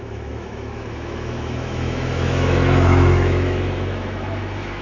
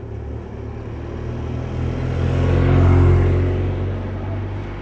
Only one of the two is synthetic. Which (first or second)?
first